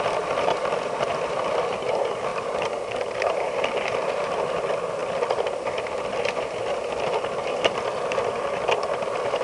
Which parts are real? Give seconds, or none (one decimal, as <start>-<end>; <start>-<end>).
0.0-9.4